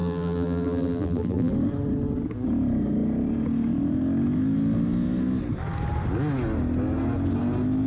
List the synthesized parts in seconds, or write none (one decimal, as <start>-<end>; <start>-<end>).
0.0-1.5